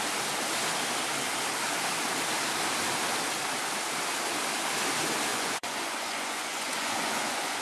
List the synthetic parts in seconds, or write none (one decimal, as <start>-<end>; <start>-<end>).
5.3-7.6